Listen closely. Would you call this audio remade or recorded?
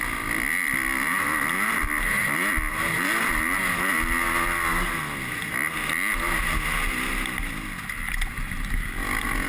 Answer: recorded